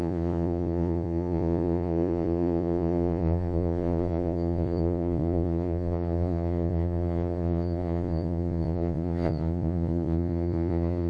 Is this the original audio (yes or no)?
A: no